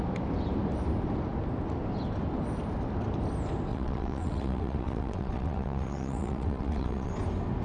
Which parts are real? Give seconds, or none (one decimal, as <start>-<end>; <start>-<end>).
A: 0.0-3.7; 7.1-7.6